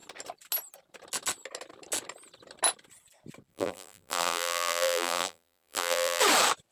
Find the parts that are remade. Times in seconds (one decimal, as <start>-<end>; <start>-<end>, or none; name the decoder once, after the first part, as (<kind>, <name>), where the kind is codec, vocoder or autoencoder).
3.5-6.2 (vocoder, BigVGAN v2)